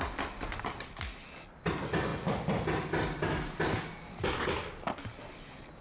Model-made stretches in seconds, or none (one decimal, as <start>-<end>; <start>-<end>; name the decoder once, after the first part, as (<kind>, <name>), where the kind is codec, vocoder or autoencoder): none